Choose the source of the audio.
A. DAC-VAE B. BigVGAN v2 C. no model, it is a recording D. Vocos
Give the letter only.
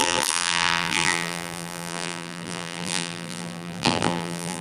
B